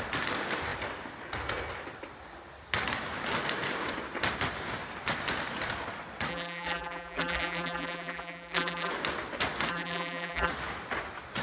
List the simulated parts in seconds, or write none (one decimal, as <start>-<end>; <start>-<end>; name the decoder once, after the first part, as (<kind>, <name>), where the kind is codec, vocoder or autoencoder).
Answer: 6.3-8.9 (vocoder, BigVGAN v2); 9.7-10.5